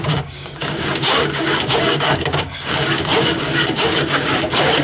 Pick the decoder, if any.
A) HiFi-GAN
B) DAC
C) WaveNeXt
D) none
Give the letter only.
B